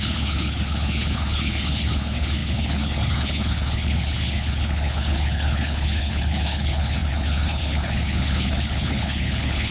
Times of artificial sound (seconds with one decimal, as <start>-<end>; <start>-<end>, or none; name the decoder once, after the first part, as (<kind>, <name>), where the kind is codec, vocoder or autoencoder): 0.0-9.7 (codec, HILCodec)

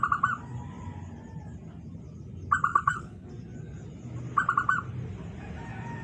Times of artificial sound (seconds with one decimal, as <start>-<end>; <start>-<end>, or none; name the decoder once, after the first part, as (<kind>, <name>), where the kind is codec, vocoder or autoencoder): 2.7-3.3 (codec, HILCodec)

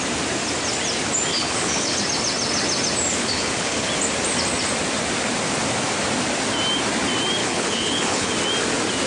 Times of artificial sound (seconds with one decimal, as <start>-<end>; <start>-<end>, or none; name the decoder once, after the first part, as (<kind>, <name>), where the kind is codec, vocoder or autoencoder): 1.3-2.0 (codec, HILCodec); 3.1-3.9; 7.4-8.3

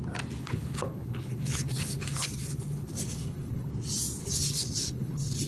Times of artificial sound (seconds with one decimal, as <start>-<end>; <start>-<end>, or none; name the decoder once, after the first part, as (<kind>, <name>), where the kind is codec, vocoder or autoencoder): 0.4-3.7 (codec, HILCodec); 4.2-5.5

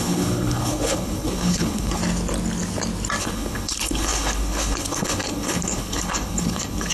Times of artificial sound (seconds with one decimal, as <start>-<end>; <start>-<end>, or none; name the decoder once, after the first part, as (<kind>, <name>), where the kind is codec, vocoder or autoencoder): 0.0-2.0 (codec, HILCodec); 3.2-6.9

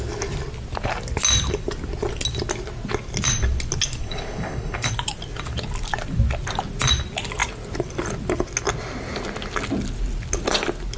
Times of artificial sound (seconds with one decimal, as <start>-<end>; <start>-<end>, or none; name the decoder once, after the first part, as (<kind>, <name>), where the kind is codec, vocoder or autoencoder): 4.0-4.9 (codec, HILCodec)

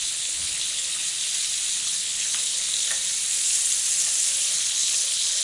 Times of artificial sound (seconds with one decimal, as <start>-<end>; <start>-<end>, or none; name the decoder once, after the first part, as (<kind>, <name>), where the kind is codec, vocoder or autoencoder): 0.0-1.0 (codec, HILCodec); 1.8-2.7; 4.5-5.4

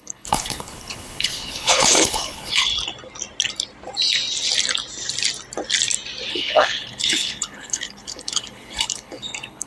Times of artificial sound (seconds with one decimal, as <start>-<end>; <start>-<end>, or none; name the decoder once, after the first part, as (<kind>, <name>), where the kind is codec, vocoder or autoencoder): 0.0-2.7 (codec, HILCodec); 6.3-9.7